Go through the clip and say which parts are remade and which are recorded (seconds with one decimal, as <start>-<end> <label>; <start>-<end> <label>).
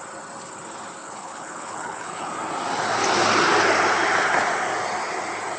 0.0-1.0 recorded; 1.0-2.3 remade; 2.3-5.6 recorded